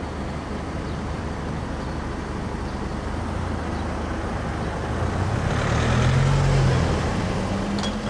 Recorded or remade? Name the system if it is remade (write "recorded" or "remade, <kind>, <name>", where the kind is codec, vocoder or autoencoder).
recorded